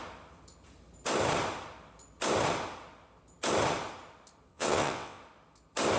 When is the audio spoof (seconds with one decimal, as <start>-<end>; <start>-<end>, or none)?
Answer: 4.5-5.2